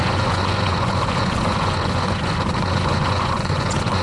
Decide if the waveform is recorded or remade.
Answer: remade